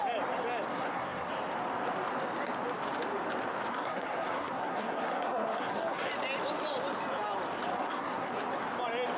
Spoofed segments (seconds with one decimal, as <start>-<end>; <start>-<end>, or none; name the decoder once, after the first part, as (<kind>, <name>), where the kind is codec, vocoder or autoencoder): 0.7-1.3 (codec, SNAC); 3.7-6.1; 7.8-8.3

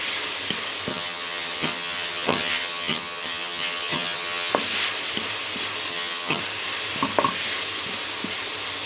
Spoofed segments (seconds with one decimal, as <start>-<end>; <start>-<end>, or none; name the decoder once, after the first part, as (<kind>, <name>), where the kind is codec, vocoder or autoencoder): 0.9-4.5 (vocoder, HiFi-GAN); 5.9-6.4

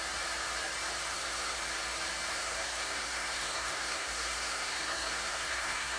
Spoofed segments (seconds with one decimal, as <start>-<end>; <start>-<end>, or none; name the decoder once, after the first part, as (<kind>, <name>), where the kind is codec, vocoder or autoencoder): 1.1-1.6 (codec, SNAC); 2.3-6.0